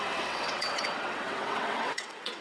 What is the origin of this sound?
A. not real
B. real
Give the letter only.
A